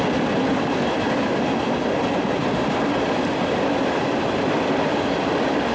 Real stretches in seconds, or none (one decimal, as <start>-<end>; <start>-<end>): 0.0-0.5; 3.1-5.7